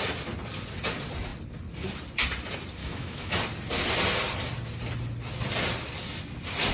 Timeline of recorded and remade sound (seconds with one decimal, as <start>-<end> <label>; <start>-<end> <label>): 0.0-2.8 recorded; 2.8-3.4 remade; 3.4-6.7 recorded